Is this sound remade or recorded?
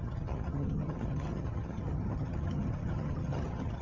remade